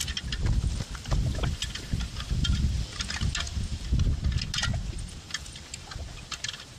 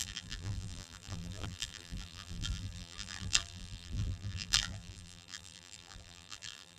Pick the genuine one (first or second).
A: first